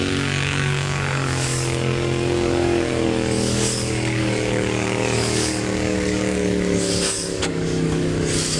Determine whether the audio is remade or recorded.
remade